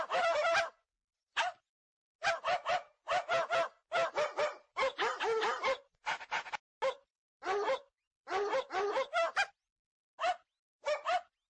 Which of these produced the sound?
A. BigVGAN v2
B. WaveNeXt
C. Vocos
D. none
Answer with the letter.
D